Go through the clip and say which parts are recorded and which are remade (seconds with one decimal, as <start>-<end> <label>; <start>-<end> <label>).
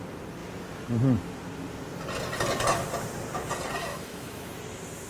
0.0-3.9 recorded; 3.9-4.5 remade; 4.5-5.1 recorded